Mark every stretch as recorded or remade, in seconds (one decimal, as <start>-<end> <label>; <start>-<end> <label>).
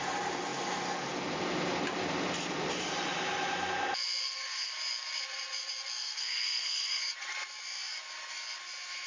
0.0-4.2 recorded; 4.2-4.7 remade; 4.7-6.0 recorded; 6.0-7.0 remade; 7.0-9.1 recorded